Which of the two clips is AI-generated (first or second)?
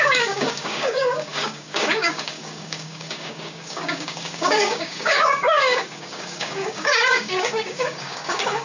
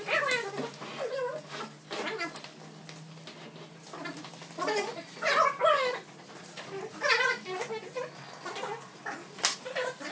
first